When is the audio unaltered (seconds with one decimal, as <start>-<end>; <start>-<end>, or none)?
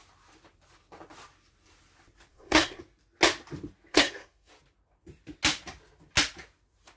0.0-2.3; 2.8-3.9; 4.5-7.0